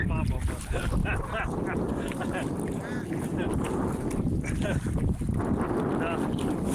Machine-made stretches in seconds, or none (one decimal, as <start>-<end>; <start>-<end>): none